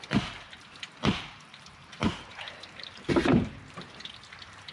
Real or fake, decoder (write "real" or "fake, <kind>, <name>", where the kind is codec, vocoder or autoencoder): fake, vocoder, BigVGAN v2